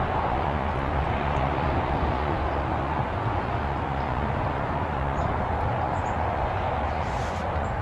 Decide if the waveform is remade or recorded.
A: remade